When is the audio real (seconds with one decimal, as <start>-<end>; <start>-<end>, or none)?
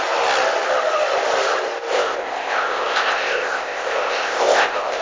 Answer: 0.0-1.9